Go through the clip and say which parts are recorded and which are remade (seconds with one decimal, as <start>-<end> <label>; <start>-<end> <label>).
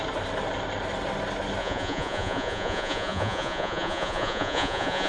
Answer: 0.0-1.6 recorded; 1.6-5.1 remade